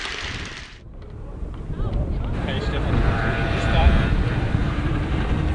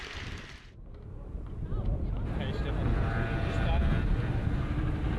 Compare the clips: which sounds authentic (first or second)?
second